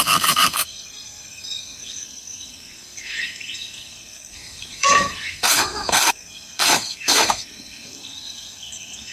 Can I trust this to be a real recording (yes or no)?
no